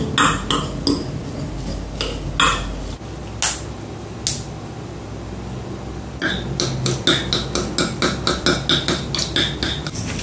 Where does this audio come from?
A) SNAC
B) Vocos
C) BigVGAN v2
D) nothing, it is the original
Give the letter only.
D